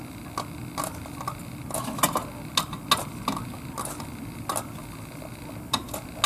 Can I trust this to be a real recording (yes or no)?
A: yes